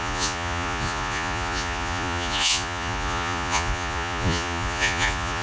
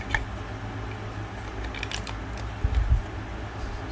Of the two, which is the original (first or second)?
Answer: second